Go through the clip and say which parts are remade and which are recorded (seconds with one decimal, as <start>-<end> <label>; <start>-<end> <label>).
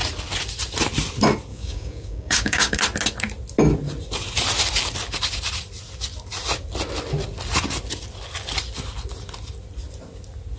0.0-1.5 recorded; 1.5-2.8 remade; 2.8-10.6 recorded